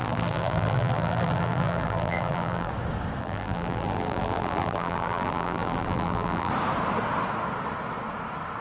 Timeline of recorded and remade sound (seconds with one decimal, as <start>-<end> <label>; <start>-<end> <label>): 0.0-2.7 remade; 2.7-3.2 recorded; 3.2-6.5 remade; 6.5-8.6 recorded